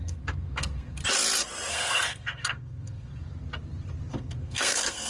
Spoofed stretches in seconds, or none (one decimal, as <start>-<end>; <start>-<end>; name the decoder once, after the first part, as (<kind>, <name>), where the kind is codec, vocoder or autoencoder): 0.0-1.0 (codec, SNAC); 1.7-3.1; 4.1-5.1